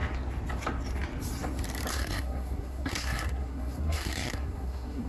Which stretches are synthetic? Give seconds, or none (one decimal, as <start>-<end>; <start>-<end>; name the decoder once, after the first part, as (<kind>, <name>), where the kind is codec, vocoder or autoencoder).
1.9-5.1 (codec, SNAC)

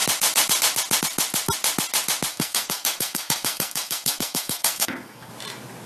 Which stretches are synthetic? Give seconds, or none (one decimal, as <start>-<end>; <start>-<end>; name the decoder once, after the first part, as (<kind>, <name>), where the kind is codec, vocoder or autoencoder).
2.3-5.3 (codec, SNAC)

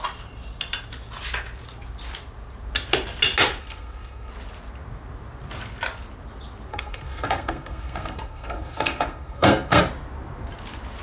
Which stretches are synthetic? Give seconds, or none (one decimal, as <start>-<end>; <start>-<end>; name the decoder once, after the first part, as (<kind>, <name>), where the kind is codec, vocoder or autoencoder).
3.6-4.3 (codec, SNAC); 6.7-9.8

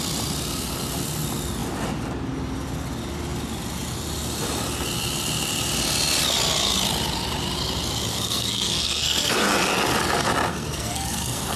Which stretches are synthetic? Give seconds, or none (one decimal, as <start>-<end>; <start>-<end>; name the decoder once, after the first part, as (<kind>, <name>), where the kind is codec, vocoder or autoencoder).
8.1-9.4 (codec, SNAC); 10.5-11.6

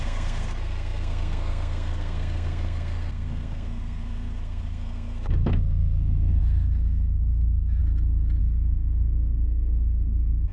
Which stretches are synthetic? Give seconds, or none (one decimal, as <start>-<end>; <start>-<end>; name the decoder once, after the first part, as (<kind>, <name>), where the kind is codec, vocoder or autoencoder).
0.0-7.8 (codec, SNAC); 8.4-10.5